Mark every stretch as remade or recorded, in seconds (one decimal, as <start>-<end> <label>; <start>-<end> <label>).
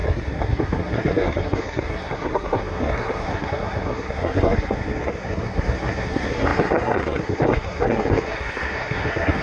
0.0-9.4 remade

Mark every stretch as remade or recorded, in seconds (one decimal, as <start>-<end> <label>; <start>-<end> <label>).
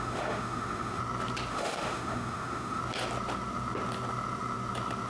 0.0-1.0 remade; 1.0-1.5 recorded; 1.5-2.8 remade; 2.8-5.1 recorded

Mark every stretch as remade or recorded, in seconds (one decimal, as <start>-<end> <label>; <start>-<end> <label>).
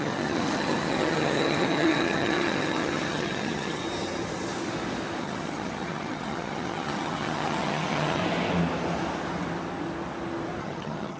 0.0-3.8 remade; 3.8-5.2 recorded; 5.2-8.2 remade; 8.2-10.6 recorded; 10.6-11.2 remade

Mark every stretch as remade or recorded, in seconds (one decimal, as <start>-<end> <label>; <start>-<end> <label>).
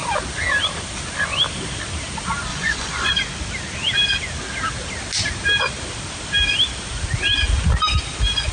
0.0-2.5 recorded; 2.5-3.1 remade; 3.1-8.5 recorded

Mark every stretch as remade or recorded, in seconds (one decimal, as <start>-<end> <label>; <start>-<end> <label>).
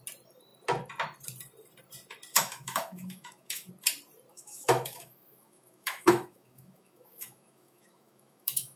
0.0-2.3 recorded; 2.3-3.7 remade; 3.7-4.3 recorded; 4.3-8.8 remade